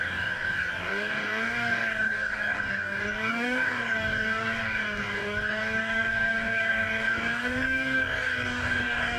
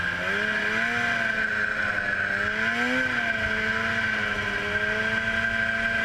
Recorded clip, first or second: second